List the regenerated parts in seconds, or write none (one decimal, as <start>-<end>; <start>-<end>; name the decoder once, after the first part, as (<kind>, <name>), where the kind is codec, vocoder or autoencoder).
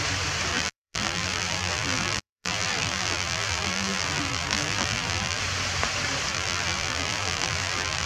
0.5-5.4 (vocoder, BigVGAN v2); 6.3-8.1